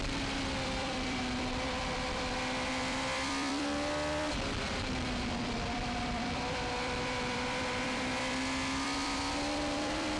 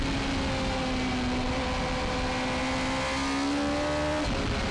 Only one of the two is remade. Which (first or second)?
first